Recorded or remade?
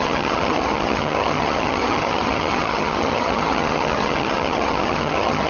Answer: remade